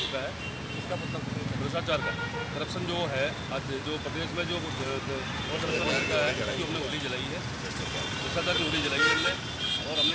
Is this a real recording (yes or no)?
yes